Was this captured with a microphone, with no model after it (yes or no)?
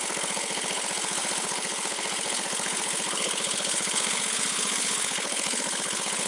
no